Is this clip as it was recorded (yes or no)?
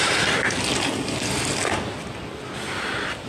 yes